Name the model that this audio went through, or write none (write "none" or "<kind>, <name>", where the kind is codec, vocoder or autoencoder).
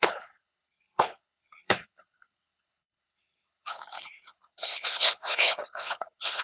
codec, HILCodec